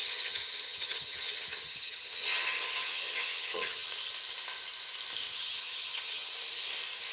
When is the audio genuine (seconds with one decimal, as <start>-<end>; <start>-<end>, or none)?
3.9-5.3; 6.3-7.1